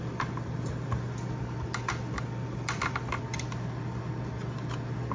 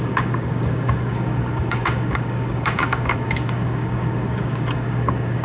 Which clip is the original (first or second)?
first